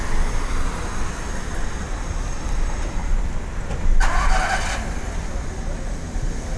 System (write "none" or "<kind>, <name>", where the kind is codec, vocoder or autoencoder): none